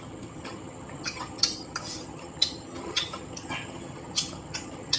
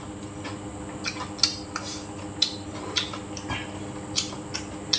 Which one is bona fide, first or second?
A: second